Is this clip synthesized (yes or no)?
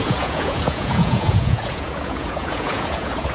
yes